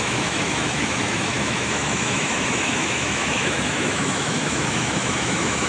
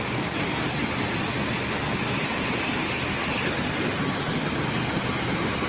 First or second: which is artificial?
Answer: first